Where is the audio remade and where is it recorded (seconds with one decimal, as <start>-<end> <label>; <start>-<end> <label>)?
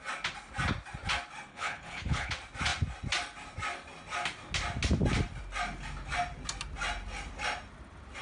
0.0-1.5 recorded; 1.5-2.3 remade; 2.3-8.2 recorded